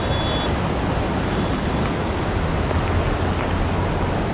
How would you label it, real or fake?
real